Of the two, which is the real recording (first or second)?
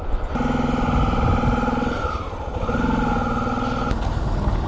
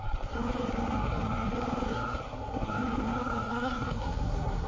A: first